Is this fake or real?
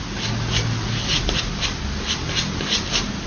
real